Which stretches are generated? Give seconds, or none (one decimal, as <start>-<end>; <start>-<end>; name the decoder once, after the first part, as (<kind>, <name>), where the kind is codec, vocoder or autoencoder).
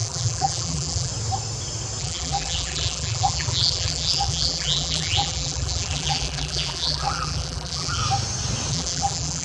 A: 0.0-1.1 (vocoder, BigVGAN v2); 2.0-8.0; 8.7-9.4